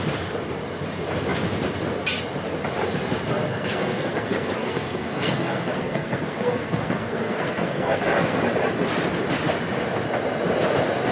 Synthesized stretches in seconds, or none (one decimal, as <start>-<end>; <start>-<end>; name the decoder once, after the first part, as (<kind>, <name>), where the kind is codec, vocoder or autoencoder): 3.5-8.4 (codec, SNAC)